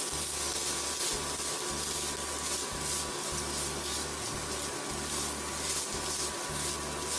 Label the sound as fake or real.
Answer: real